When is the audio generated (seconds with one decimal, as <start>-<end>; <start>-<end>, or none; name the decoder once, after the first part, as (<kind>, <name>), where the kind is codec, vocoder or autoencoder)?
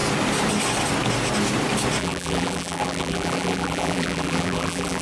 2.0-5.0 (vocoder, BigVGAN v2)